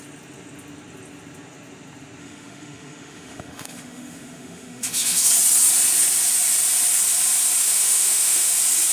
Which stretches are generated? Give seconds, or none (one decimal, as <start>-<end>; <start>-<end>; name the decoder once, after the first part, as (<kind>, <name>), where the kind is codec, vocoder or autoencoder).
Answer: 2.2-5.3 (autoencoder, DAC-VAE); 7.6-8.5